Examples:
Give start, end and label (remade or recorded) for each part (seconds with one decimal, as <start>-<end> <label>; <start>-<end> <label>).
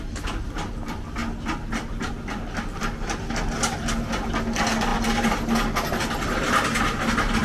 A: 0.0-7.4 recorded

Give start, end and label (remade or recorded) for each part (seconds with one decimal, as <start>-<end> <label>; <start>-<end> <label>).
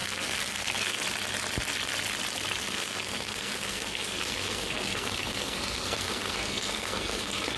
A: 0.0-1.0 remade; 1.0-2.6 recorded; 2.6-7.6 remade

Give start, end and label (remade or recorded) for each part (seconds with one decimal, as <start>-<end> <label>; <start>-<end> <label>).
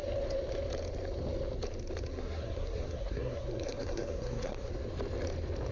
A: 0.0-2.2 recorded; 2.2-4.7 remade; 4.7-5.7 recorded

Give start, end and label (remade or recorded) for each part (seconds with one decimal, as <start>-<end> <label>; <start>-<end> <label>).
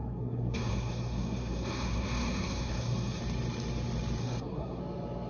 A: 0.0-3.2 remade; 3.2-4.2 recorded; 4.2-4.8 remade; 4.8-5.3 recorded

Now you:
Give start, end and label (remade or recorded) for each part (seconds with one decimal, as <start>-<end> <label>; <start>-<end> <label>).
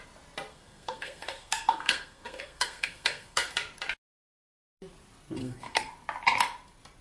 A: 0.0-0.5 recorded; 0.5-3.5 remade; 3.5-5.4 recorded; 5.4-5.9 remade; 5.9-7.0 recorded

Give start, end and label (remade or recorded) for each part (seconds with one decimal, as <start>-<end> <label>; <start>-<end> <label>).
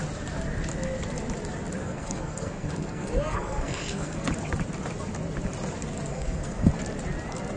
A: 0.0-1.8 recorded; 1.8-4.3 remade; 4.3-6.1 recorded; 6.1-6.7 remade; 6.7-7.6 recorded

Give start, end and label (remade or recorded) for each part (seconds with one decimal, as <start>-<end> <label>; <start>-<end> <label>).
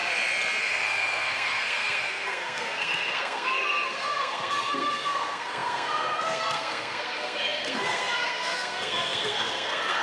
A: 0.0-0.6 recorded; 0.6-10.0 remade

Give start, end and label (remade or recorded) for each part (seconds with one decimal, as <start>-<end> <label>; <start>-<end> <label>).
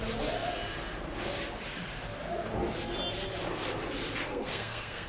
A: 0.0-4.2 recorded; 4.2-5.1 remade